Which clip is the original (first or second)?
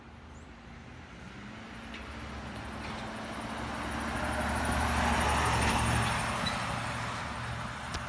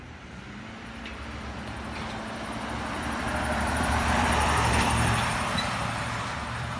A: first